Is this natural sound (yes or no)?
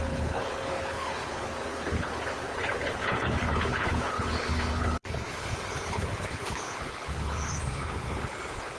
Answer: no